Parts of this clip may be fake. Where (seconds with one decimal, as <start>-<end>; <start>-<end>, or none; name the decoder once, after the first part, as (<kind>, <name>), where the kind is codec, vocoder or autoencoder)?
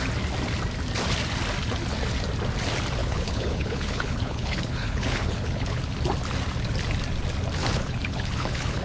3.0-5.8 (codec, HILCodec); 7.6-8.8